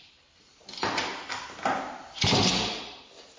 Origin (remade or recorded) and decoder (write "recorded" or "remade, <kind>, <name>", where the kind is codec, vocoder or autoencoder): recorded